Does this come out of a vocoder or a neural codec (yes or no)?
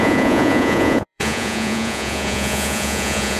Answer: yes